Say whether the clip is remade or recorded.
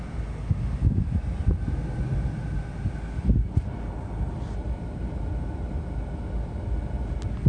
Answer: recorded